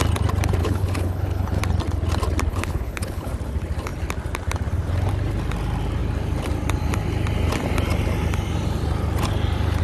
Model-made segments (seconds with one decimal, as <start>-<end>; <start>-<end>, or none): 0.6-1.6; 2.5-3.3